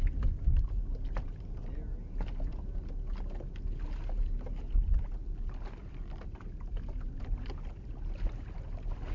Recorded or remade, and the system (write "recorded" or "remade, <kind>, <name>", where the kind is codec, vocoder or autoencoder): recorded